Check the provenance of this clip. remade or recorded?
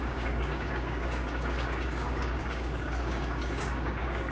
remade